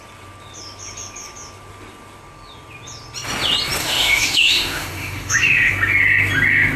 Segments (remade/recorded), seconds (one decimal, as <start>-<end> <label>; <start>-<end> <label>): 0.0-3.8 recorded; 3.8-5.7 remade; 5.7-6.8 recorded